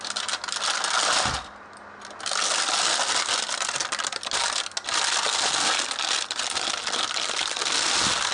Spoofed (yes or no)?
no